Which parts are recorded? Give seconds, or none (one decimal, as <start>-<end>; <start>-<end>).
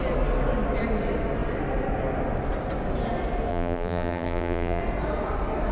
0.0-3.5; 4.8-5.7